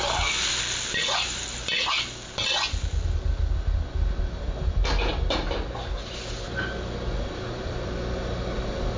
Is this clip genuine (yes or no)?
yes